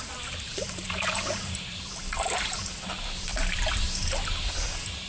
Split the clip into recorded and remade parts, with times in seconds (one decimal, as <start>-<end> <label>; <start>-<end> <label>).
0.0-3.3 remade; 3.3-5.1 recorded